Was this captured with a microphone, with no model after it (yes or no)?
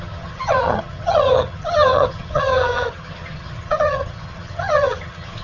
no